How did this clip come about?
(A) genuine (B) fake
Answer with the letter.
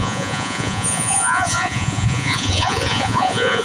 B